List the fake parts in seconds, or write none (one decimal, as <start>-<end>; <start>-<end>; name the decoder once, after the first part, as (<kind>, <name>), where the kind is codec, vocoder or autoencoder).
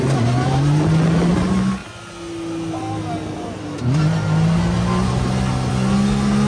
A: none